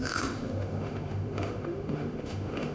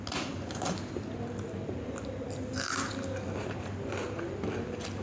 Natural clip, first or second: second